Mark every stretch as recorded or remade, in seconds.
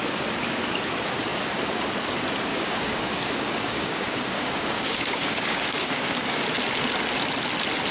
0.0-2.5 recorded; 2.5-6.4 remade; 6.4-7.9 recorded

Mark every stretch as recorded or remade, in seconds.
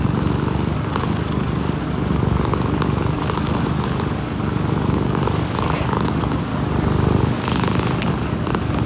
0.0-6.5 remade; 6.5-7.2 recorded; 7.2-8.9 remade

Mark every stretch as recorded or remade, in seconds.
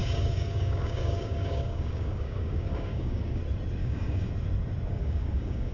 0.0-3.4 remade; 3.4-3.8 recorded; 3.8-4.3 remade; 4.3-4.9 recorded; 4.9-5.7 remade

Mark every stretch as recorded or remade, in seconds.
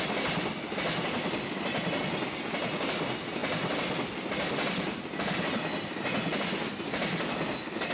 0.0-7.9 recorded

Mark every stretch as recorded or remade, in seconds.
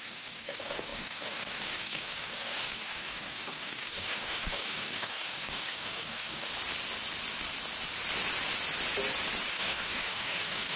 0.0-6.5 remade; 6.5-9.5 recorded; 9.5-10.8 remade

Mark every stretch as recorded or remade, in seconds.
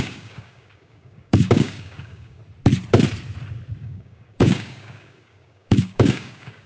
0.0-2.4 remade; 2.4-3.8 recorded; 3.8-6.7 remade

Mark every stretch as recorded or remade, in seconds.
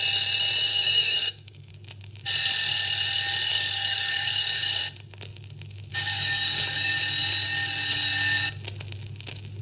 0.0-0.7 recorded; 0.7-1.7 remade; 1.7-3.5 recorded; 3.5-4.8 remade; 4.8-5.9 recorded; 5.9-7.0 remade; 7.0-9.6 recorded